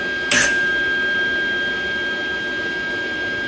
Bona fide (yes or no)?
yes